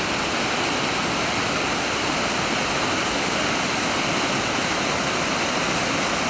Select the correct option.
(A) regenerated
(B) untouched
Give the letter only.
B